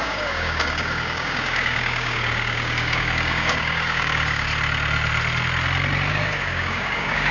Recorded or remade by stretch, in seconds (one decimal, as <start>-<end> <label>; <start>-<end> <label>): 0.0-4.5 remade; 4.5-6.1 recorded; 6.1-7.3 remade